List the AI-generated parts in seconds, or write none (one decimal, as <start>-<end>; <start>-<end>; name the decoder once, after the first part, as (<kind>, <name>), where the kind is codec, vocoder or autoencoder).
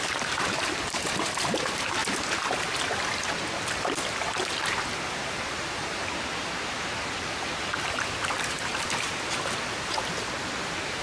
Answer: 0.0-2.0 (vocoder, BigVGAN v2); 5.1-6.0; 7.8-11.0